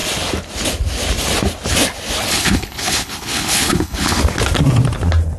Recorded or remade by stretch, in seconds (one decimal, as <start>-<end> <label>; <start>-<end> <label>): 0.0-2.3 recorded; 2.3-4.2 remade; 4.2-5.4 recorded